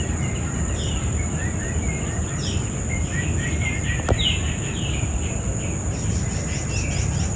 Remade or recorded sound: recorded